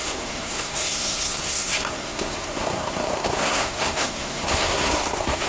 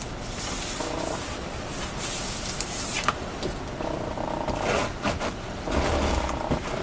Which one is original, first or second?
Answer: second